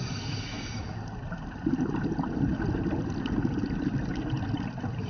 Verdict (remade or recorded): recorded